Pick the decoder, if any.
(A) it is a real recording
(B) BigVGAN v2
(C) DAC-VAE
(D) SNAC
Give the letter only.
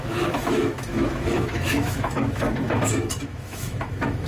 C